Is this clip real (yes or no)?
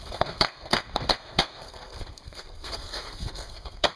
no